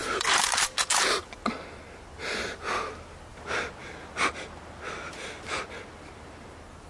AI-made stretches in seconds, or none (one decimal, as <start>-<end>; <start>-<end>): none